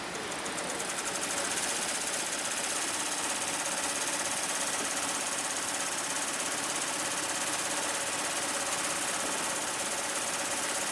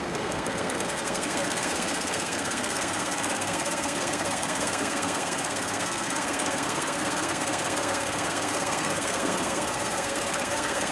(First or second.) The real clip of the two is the first